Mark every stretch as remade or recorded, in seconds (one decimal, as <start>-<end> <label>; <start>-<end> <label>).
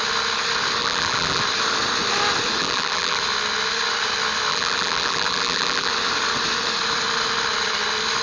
0.0-0.8 recorded; 0.8-1.4 remade; 1.4-2.6 recorded; 2.6-3.2 remade; 3.2-4.5 recorded; 4.5-5.9 remade; 5.9-8.2 recorded